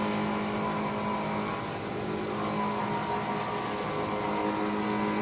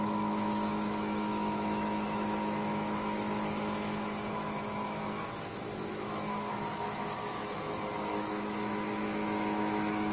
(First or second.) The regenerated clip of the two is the second